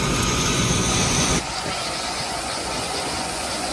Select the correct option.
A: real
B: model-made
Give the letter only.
B